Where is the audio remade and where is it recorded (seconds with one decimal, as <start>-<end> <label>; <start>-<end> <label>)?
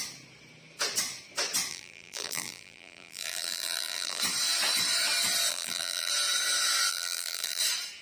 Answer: 0.0-1.7 recorded; 1.7-4.2 remade; 4.2-5.5 recorded; 5.5-6.1 remade; 6.1-6.9 recorded; 6.9-7.6 remade; 7.6-8.0 recorded